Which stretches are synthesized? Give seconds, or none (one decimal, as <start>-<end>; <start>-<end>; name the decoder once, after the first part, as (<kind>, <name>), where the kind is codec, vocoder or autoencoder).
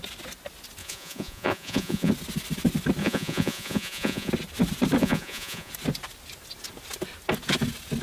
0.8-2.1 (vocoder, Vocos); 3.0-4.3; 5.0-5.7